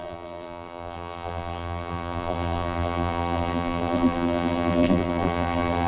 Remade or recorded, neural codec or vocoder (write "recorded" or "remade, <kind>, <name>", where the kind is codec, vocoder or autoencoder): remade, vocoder, BigVGAN v2